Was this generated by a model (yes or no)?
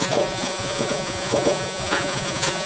yes